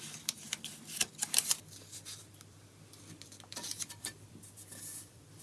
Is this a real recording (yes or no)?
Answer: no